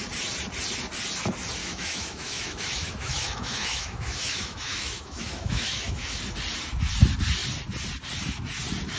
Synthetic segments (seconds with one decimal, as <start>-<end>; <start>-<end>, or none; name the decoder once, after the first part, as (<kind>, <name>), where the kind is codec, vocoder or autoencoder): 1.6-6.2 (autoencoder, DAC-VAE)